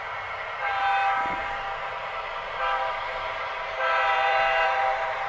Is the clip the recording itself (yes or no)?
no